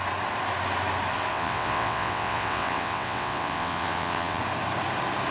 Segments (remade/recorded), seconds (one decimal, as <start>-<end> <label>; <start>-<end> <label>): 0.0-1.3 recorded; 1.3-4.4 remade; 4.4-5.3 recorded